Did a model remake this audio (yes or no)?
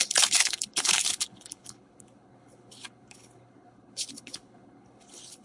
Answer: yes